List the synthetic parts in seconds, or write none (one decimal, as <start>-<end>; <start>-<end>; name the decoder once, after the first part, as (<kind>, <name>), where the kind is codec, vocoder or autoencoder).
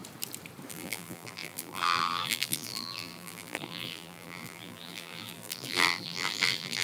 0.7-6.8 (vocoder, BigVGAN v2)